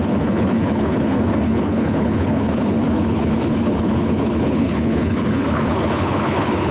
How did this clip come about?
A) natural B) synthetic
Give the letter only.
B